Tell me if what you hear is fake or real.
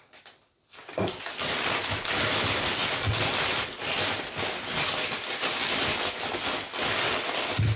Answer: real